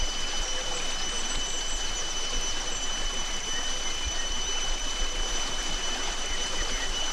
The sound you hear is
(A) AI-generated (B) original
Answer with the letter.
A